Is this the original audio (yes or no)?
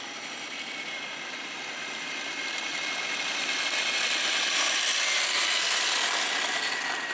no